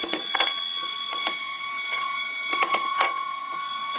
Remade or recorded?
remade